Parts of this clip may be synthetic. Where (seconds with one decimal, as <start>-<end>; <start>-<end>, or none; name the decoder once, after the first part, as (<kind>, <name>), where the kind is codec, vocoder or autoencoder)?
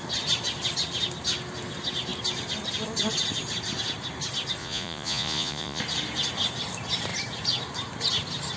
4.6-5.8 (vocoder, Vocos)